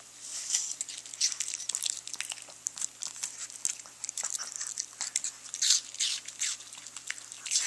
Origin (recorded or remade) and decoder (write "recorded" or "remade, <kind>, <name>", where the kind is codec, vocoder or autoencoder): recorded